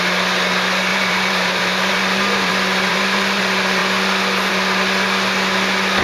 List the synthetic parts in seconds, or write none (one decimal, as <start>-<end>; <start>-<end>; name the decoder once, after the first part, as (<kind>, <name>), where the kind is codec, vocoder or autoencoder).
0.9-2.5 (vocoder, BigVGAN v2); 2.9-3.4